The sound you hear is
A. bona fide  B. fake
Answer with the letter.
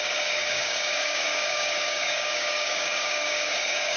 B